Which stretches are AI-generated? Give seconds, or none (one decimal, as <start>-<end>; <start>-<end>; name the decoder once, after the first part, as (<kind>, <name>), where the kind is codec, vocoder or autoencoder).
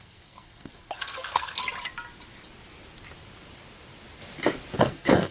0.0-1.6 (codec, SNAC); 4.8-5.3